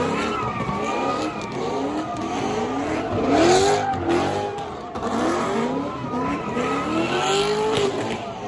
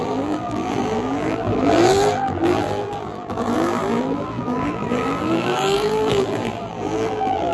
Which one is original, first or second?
first